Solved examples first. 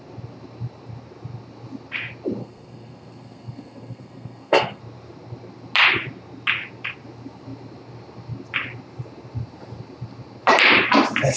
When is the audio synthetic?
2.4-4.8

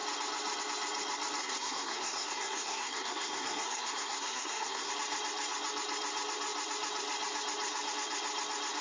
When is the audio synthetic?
1.4-4.9

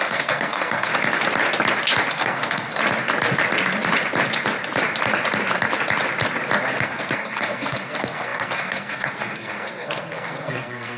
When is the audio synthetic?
0.0-0.9; 2.1-2.8; 6.8-11.0